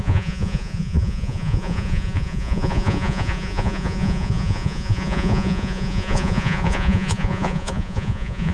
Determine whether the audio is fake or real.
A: fake